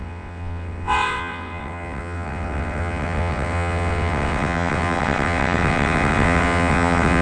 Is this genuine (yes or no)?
no